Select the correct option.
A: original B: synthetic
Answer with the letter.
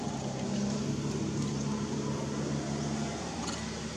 A